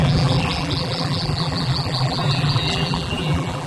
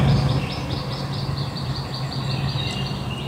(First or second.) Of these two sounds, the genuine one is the second